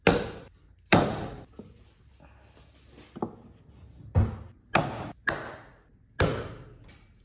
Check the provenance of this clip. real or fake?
real